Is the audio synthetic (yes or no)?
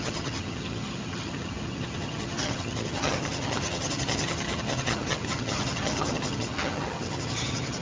yes